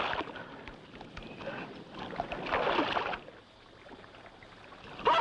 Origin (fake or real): real